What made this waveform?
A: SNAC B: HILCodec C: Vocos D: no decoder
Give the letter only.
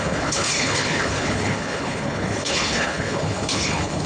B